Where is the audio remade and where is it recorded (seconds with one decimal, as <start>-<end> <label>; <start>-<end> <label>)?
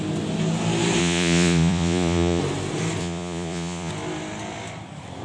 0.0-1.0 recorded; 1.0-2.4 remade; 2.4-3.0 recorded; 3.0-3.9 remade; 3.9-5.2 recorded